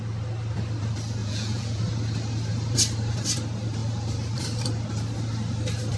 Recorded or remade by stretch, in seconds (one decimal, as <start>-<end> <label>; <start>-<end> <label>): 0.0-1.2 recorded; 1.2-1.8 remade; 1.8-6.0 recorded